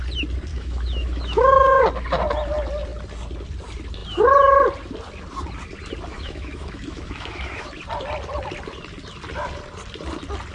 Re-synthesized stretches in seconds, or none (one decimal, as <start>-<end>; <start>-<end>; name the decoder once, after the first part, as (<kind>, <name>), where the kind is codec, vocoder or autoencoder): 0.5-1.8 (autoencoder, DAC-VAE); 6.1-7.7